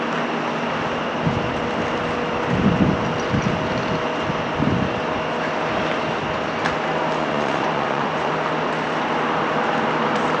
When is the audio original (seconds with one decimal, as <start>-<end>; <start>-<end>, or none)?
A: 0.0-7.2; 8.3-10.4